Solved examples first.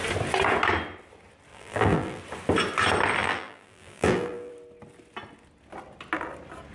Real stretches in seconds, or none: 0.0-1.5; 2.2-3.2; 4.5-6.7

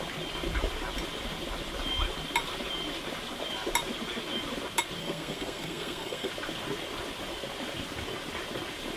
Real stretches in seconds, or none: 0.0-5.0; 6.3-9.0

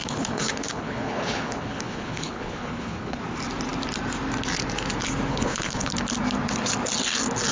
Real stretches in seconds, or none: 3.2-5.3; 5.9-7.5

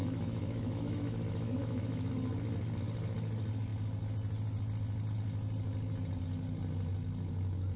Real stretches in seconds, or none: 2.1-7.8

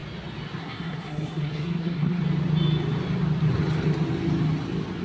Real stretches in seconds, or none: 0.0-0.6; 2.2-5.0